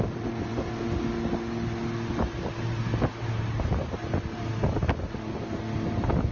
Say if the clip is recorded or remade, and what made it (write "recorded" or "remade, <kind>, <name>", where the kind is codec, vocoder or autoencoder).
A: recorded